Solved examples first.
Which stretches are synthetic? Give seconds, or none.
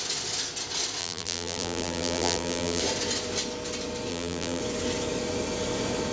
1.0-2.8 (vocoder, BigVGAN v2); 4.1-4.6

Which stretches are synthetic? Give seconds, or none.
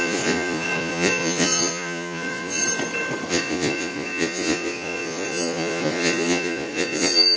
0.0-2.6 (vocoder, Vocos); 3.3-7.4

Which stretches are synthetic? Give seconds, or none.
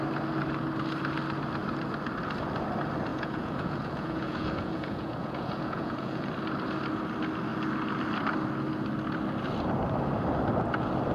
3.1-6.3 (vocoder, Vocos)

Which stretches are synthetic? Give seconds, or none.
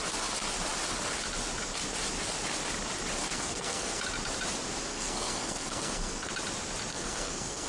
3.3-4.0 (codec, SNAC); 4.9-6.3; 6.9-7.7